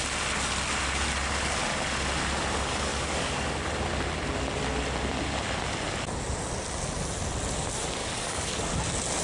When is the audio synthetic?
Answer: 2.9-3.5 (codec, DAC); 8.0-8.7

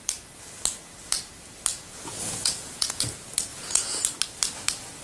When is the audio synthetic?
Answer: 1.7-3.0 (vocoder, Vocos); 3.5-4.0